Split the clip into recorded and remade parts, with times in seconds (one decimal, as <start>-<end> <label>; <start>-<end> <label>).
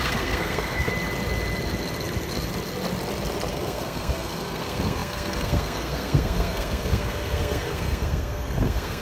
0.0-0.9 remade; 0.9-3.5 recorded; 3.5-9.0 remade